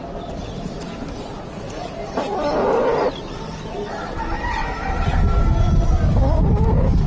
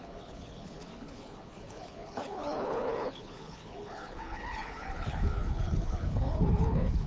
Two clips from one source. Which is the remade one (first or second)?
second